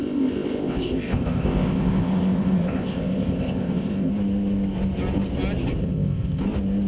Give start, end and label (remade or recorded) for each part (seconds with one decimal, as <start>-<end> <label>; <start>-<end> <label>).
0.0-4.1 remade; 4.1-5.8 recorded; 5.8-6.4 remade; 6.4-6.9 recorded